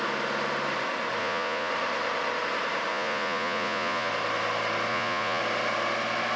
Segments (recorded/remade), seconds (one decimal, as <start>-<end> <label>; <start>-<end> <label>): 0.0-1.2 recorded; 1.2-1.7 remade; 1.7-2.9 recorded; 2.9-4.1 remade; 4.1-4.9 recorded; 4.9-5.4 remade; 5.4-6.4 recorded